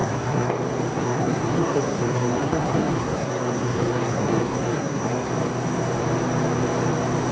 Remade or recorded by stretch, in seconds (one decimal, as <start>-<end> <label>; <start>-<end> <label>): 0.0-0.5 remade; 0.5-0.9 recorded; 0.9-5.3 remade; 5.3-7.3 recorded